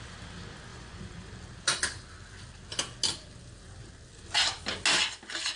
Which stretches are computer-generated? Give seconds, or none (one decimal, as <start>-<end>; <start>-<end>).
0.7-1.3